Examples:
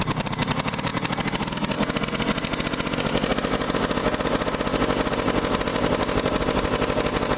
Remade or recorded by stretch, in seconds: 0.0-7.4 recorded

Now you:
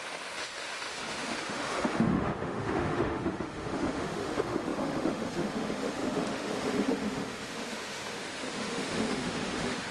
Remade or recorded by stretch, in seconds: 0.0-9.9 remade

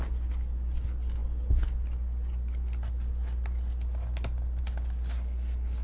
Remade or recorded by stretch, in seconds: 0.0-5.8 recorded

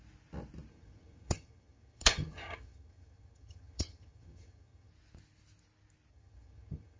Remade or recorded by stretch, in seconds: 0.0-0.7 recorded; 0.7-4.9 remade; 4.9-6.1 recorded; 6.1-7.0 remade

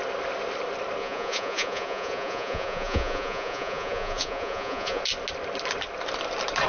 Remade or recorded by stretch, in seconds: 0.0-1.0 recorded; 1.0-5.0 remade; 5.0-6.7 recorded

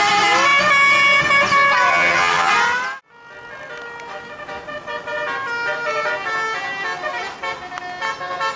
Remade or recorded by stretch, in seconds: 0.0-1.9 recorded; 1.9-2.5 remade; 2.5-8.6 recorded